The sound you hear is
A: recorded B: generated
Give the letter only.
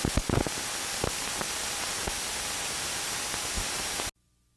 A